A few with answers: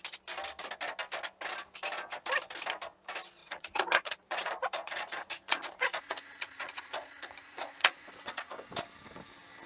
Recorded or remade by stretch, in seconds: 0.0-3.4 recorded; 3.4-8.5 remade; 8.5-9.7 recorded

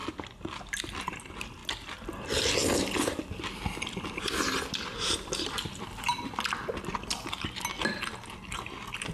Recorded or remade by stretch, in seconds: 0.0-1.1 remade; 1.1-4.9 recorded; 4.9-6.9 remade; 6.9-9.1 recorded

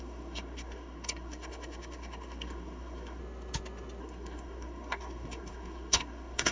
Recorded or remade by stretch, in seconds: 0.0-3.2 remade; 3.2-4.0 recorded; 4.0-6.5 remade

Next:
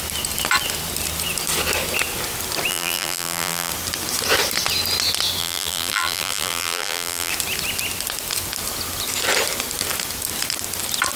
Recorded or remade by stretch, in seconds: 0.0-2.7 recorded; 2.7-3.7 remade; 3.7-5.4 recorded; 5.4-7.3 remade; 7.3-11.2 recorded

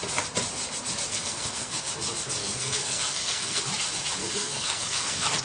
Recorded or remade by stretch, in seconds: 0.0-1.1 recorded; 1.1-1.9 remade; 1.9-2.4 recorded; 2.4-3.6 remade; 3.6-4.2 recorded; 4.2-5.4 remade